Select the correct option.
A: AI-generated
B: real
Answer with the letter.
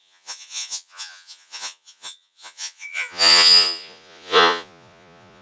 A